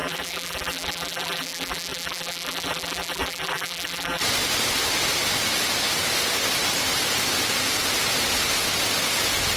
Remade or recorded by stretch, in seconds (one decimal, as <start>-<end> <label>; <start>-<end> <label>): 0.0-4.2 remade; 4.2-9.6 recorded